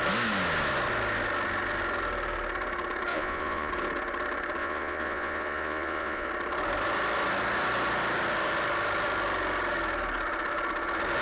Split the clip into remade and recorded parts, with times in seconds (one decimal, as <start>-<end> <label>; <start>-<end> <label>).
0.0-3.1 recorded; 3.1-3.7 remade; 3.7-4.6 recorded; 4.6-6.3 remade; 6.3-11.2 recorded